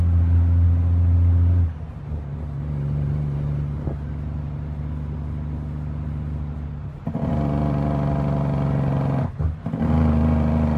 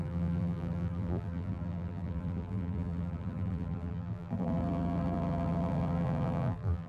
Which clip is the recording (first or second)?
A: first